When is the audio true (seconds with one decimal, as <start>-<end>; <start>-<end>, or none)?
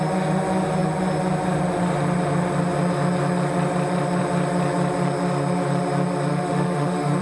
0.0-6.3